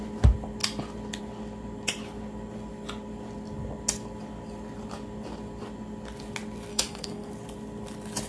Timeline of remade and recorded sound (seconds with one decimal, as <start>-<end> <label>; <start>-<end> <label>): 0.0-6.7 recorded; 6.7-7.3 remade; 7.3-8.3 recorded